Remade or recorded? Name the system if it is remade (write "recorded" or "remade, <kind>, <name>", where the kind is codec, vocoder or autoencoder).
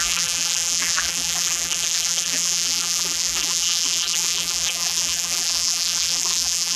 remade, vocoder, BigVGAN v2